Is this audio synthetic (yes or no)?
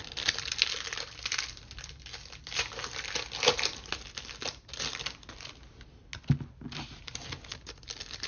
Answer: no